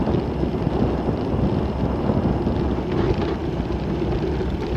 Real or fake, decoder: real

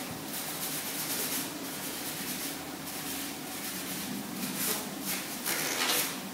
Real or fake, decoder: real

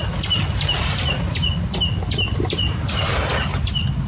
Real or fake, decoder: real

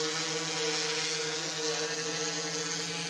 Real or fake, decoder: real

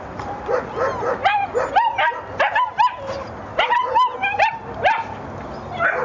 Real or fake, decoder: real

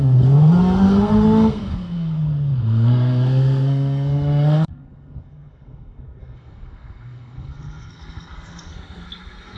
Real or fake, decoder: fake, codec, SNAC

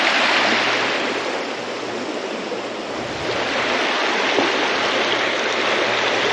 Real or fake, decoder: real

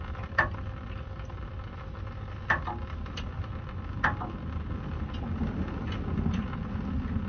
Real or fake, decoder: real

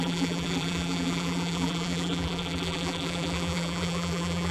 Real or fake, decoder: fake, vocoder, BigVGAN v2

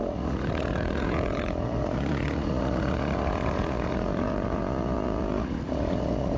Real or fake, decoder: fake, vocoder, Vocos